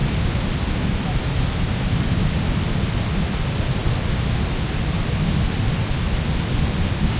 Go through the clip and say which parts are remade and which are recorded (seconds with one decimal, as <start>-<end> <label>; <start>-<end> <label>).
0.0-7.2 recorded